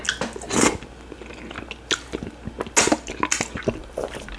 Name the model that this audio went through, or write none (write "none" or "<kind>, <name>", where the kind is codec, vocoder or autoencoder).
none